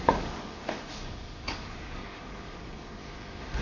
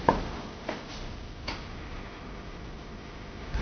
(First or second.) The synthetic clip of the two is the first